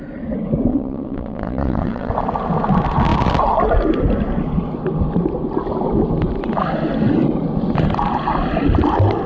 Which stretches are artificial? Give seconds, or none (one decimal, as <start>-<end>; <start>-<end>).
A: 0.7-2.1